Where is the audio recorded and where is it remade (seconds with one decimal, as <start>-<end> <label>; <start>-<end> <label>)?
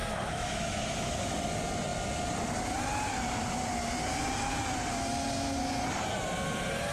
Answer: 0.0-1.5 remade; 1.5-6.9 recorded